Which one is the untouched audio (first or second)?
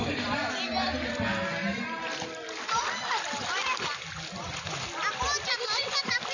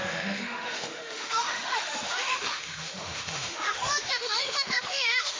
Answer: first